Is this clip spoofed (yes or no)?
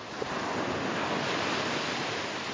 no